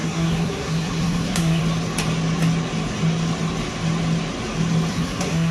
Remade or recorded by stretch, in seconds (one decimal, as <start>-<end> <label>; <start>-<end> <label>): 0.0-1.6 remade; 1.6-4.9 recorded; 4.9-5.5 remade